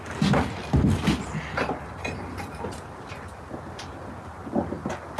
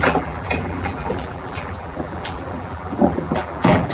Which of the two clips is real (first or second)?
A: first